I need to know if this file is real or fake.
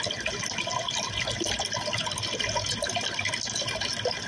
real